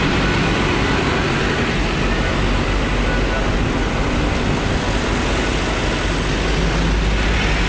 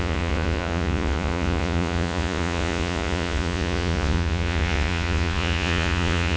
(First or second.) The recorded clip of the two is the first